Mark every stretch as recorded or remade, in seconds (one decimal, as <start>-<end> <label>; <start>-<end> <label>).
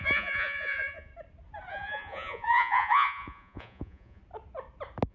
0.0-1.1 remade; 1.1-1.7 recorded; 1.7-4.2 remade; 4.2-5.1 recorded